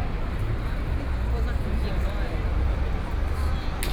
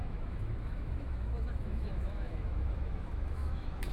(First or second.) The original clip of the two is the first